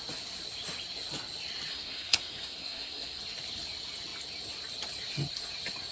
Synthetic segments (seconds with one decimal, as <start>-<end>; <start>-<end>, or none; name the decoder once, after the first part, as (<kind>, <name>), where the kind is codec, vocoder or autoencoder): 1.7-3.2 (codec, SNAC)

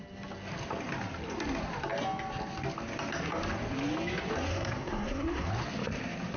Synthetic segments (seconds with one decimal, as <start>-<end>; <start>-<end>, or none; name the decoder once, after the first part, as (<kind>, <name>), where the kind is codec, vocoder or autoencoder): 4.5-5.5 (codec, SNAC)

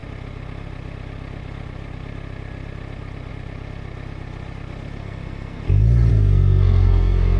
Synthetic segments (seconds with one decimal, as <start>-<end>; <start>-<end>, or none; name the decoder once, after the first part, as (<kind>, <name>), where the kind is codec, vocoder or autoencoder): 5.0-5.6 (codec, SNAC); 6.1-7.4

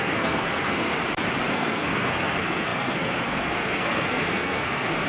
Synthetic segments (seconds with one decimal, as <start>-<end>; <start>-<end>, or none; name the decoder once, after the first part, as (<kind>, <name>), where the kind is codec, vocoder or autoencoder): 0.0-0.9 (codec, SNAC); 1.5-5.1

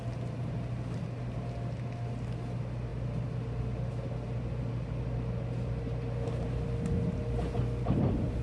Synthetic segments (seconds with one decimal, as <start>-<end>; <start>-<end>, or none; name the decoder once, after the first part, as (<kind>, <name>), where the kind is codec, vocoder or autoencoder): none

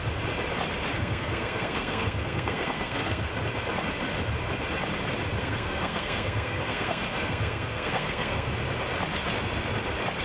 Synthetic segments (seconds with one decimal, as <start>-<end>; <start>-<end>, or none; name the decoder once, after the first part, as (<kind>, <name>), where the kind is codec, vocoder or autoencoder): 0.9-3.3 (codec, SNAC); 5.4-8.5

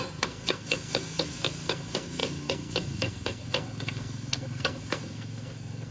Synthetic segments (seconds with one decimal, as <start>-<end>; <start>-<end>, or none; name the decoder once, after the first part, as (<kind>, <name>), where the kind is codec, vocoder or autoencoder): 0.0-5.9 (codec, SNAC)